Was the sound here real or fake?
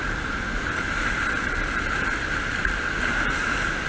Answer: real